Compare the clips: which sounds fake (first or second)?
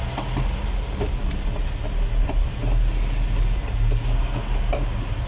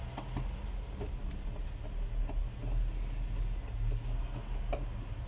first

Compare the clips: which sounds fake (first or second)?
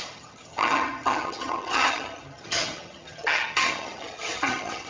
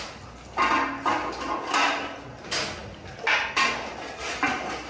first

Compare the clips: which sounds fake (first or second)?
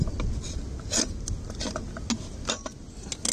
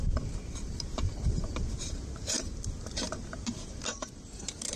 second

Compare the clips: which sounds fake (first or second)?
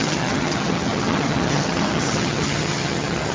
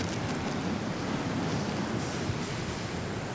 first